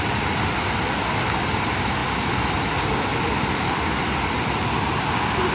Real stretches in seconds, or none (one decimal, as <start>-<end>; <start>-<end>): 0.0-5.5